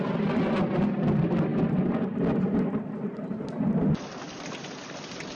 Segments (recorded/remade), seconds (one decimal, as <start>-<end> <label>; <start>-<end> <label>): 0.0-5.4 recorded